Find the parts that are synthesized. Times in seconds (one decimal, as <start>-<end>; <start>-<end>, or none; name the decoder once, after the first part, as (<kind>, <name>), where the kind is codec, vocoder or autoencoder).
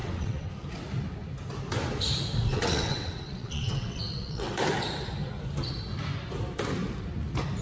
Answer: 0.0-0.5 (vocoder, WaveNeXt); 2.5-4.5